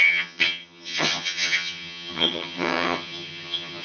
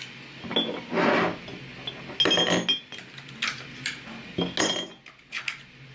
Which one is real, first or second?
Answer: second